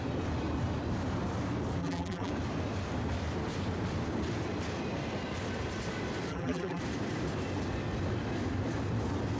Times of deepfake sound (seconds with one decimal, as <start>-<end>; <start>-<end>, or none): 1.8-2.3; 6.3-6.8